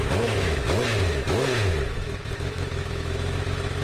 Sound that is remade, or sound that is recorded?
remade